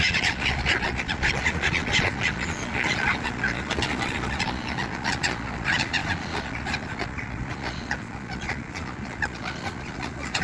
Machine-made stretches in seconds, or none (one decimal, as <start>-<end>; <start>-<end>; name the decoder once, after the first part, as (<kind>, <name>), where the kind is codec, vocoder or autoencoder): 0.0-10.4 (vocoder, Vocos)